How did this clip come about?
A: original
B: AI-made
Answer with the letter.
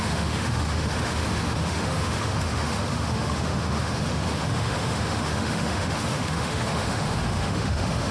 B